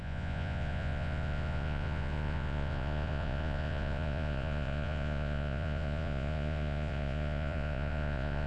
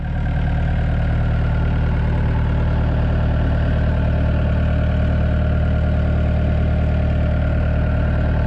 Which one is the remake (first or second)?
first